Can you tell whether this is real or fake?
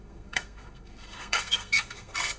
fake